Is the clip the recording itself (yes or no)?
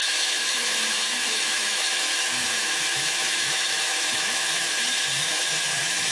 no